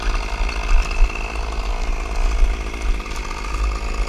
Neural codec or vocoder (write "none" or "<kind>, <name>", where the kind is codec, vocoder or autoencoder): none